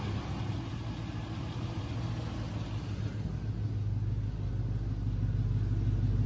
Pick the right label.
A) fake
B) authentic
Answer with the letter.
B